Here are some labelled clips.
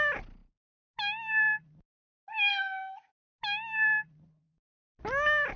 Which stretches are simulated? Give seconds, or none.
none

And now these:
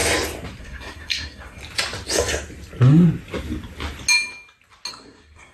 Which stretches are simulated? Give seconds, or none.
0.6-1.6 (codec, SNAC); 4.9-5.5